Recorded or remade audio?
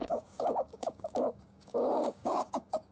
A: remade